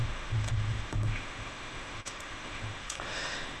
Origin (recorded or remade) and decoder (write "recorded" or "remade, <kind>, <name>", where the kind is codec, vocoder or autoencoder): remade, autoencoder, DAC-VAE